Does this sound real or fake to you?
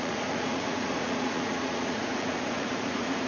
fake